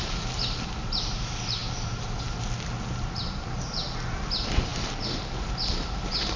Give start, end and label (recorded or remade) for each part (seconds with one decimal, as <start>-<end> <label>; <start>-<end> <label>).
0.0-6.4 recorded